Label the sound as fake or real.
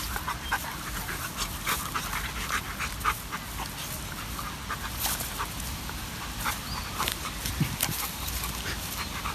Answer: real